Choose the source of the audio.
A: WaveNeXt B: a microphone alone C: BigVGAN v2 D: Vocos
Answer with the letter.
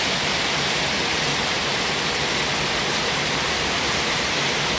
B